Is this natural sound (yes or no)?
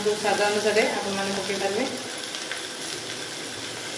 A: yes